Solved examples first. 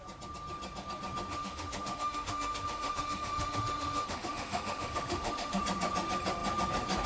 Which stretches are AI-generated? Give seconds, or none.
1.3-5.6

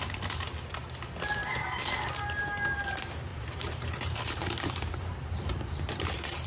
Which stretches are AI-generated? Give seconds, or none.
3.3-6.5

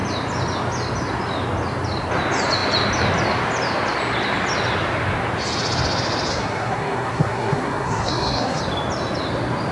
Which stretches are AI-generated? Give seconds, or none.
6.3-8.6

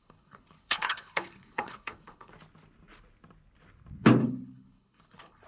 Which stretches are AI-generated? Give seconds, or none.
0.0-2.3; 4.2-5.5

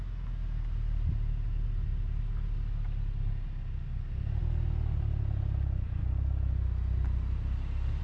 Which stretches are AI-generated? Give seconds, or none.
none

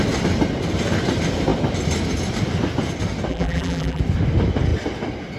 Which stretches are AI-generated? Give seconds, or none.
3.3-4.0

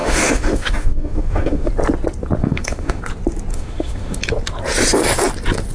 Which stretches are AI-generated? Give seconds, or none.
0.0-1.7; 2.4-3.0; 3.5-4.2

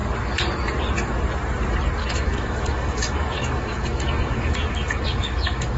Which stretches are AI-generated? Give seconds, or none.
2.0-5.8